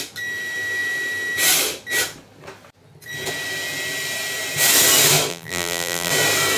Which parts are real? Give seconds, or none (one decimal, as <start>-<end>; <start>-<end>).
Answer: 0.0-5.3; 6.1-6.6